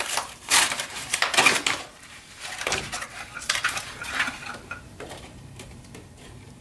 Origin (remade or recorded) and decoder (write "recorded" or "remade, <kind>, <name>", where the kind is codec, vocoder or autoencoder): remade, vocoder, BigVGAN v2